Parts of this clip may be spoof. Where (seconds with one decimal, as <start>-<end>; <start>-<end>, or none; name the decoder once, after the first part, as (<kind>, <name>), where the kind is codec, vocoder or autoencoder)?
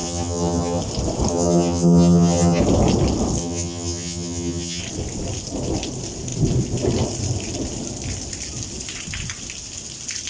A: 0.0-0.8 (vocoder, HiFi-GAN); 1.3-2.6; 3.4-4.8